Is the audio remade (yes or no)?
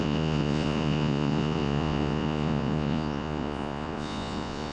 yes